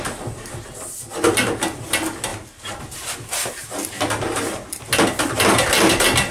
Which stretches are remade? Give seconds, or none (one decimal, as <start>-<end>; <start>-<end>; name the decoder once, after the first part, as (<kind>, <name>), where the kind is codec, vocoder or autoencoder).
none